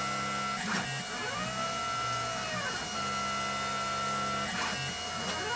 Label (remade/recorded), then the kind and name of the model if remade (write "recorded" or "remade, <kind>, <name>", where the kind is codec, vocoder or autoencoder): recorded